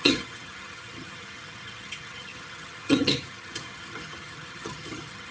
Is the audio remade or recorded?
remade